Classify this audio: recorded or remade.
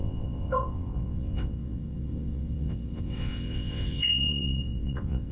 remade